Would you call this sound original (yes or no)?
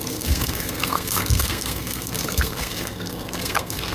no